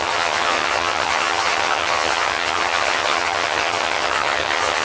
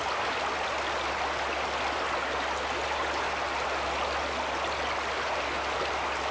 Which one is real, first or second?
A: second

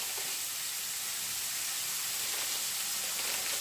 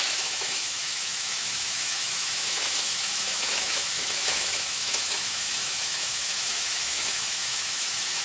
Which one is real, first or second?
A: first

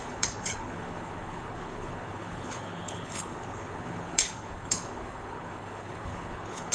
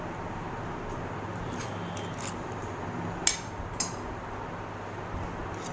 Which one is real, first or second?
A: second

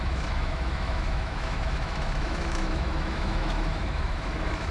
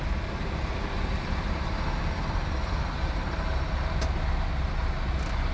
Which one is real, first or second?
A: second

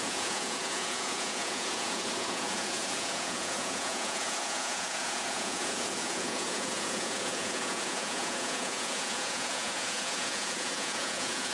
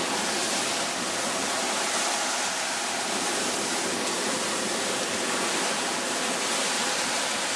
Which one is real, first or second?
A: second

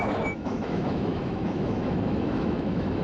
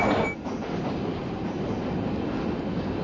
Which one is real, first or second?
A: second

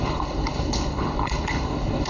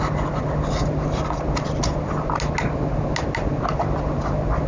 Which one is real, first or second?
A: second